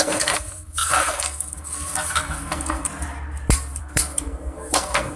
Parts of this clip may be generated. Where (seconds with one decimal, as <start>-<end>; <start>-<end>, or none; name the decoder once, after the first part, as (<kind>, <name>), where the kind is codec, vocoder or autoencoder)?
0.0-2.9 (codec, SNAC); 3.8-5.2